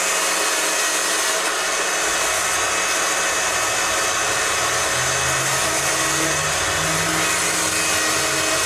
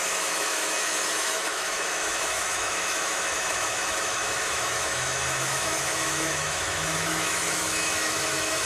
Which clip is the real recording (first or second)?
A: first